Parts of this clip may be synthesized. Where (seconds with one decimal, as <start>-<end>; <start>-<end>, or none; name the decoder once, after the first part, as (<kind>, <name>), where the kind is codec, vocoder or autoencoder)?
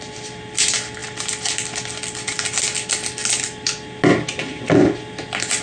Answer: none